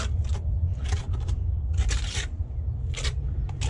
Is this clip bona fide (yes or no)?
yes